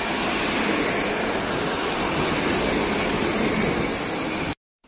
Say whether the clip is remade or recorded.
recorded